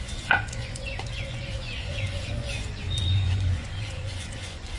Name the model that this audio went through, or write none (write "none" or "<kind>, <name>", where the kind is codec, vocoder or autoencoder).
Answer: vocoder, Vocos